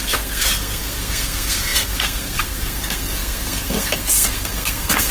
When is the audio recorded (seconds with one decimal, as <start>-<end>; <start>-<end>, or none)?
none

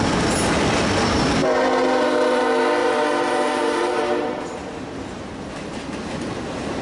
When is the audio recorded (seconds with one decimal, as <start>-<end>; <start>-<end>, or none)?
0.0-1.4; 2.4-2.8; 5.3-6.8

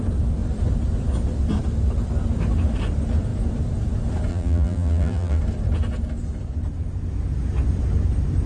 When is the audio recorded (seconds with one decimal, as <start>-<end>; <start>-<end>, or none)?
0.0-4.3; 5.4-8.5

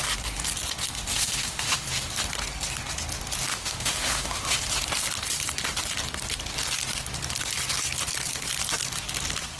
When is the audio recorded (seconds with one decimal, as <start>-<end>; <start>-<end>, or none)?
0.0-1.1; 2.1-3.5; 4.6-9.6

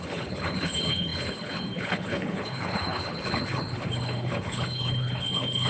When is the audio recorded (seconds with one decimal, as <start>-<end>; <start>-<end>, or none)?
none